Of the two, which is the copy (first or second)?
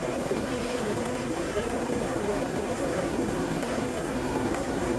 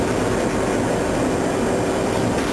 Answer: first